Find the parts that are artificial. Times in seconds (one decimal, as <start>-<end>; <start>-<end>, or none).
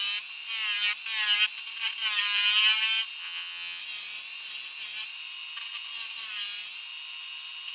3.2-3.8